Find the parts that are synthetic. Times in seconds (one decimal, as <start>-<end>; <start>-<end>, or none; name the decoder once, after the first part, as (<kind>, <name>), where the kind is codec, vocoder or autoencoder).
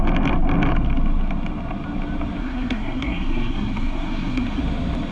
2.4-4.6 (codec, SNAC)